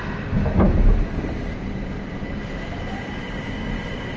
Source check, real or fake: real